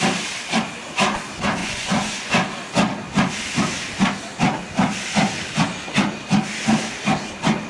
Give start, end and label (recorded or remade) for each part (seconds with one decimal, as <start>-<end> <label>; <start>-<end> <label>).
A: 0.0-1.6 recorded; 1.6-2.3 remade; 2.3-7.7 recorded